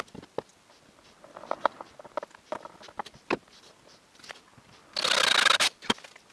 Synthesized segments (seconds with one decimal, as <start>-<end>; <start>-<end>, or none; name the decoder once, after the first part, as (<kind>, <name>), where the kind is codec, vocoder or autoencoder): none